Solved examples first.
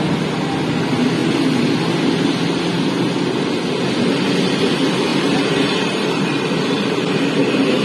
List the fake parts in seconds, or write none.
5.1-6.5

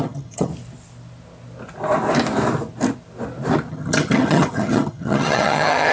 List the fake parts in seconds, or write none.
0.0-0.5; 3.7-5.9

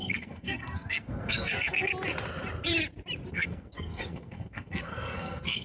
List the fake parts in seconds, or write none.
0.0-1.9; 3.3-5.6

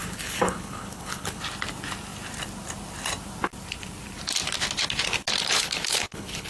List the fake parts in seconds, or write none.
0.0-1.4; 5.4-6.5

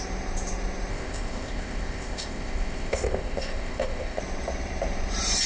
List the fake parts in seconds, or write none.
0.9-4.2

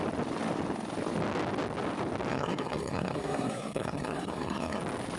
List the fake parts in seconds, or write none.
2.3-4.8

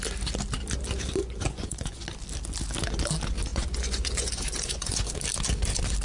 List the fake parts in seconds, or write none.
1.2-2.0; 3.5-5.1

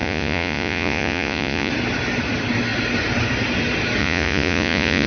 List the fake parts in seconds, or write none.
0.0-1.7; 4.0-5.1